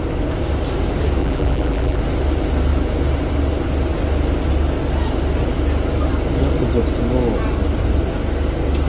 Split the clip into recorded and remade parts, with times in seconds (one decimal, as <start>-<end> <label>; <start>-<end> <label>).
0.0-1.2 recorded; 1.2-2.0 remade; 2.0-8.9 recorded